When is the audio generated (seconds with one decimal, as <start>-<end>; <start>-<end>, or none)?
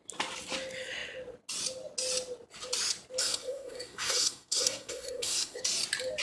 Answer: 3.2-5.6